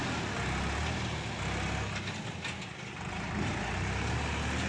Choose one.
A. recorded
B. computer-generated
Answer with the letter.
A